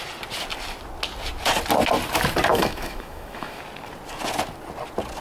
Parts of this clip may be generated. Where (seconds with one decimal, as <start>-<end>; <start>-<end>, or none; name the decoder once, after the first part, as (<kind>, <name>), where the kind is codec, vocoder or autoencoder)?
2.5-3.6 (autoencoder, DAC-VAE)